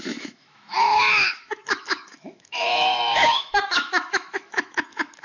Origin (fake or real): fake